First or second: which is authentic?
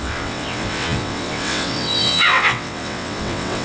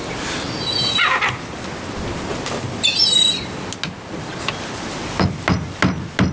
second